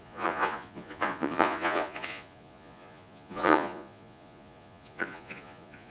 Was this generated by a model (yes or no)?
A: yes